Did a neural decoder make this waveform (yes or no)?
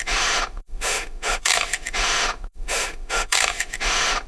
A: yes